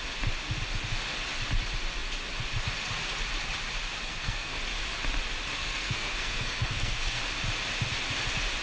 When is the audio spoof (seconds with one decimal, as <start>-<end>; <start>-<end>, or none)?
4.1-4.6; 5.6-7.2